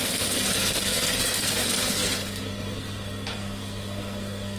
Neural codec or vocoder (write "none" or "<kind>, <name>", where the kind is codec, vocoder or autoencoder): codec, SNAC